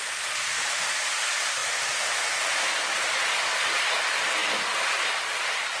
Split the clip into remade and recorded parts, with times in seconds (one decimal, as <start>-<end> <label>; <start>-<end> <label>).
0.0-5.8 recorded